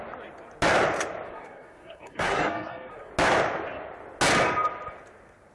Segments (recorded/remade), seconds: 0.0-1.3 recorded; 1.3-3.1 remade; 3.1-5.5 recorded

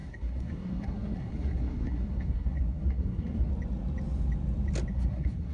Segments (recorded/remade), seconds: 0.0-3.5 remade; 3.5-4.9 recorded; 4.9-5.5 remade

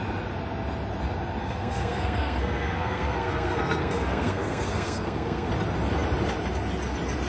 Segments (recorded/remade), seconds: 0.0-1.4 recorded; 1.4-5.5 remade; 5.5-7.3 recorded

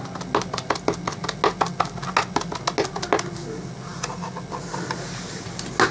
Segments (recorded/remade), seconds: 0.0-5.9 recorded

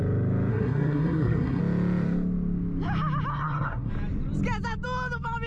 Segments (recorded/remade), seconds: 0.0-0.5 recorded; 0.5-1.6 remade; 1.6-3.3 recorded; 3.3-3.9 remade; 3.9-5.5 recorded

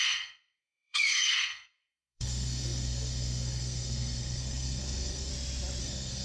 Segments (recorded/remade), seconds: 0.0-5.3 remade; 5.3-5.8 recorded; 5.8-6.2 remade